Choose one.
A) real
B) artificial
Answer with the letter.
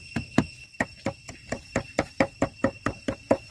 A